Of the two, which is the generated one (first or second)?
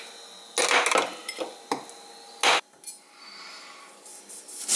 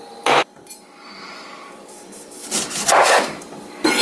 second